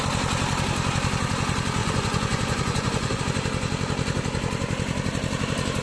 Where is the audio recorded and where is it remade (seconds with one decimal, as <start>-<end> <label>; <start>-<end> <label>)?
0.0-1.8 recorded; 1.8-3.2 remade; 3.2-5.8 recorded